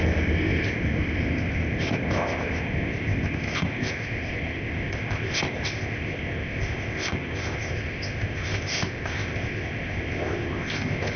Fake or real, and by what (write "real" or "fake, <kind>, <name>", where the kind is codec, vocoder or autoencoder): fake, codec, ZipCodec